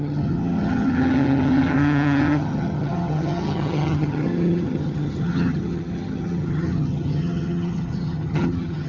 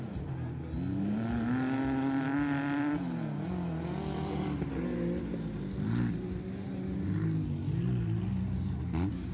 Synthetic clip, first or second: first